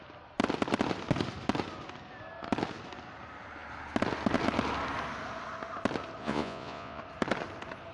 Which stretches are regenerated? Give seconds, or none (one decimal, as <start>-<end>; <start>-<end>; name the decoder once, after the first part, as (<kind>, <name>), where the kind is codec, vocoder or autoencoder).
6.2-7.0 (vocoder, Vocos)